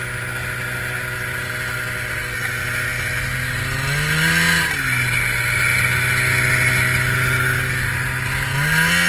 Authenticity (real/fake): real